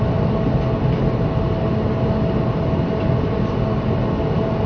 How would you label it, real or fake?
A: real